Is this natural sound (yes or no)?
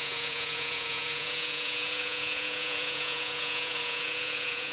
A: no